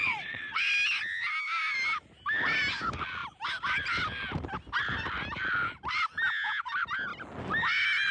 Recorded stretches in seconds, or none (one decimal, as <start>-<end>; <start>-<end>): 0.6-8.1